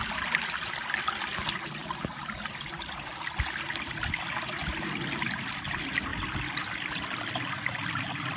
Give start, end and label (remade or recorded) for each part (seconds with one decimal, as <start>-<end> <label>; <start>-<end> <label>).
0.0-8.4 recorded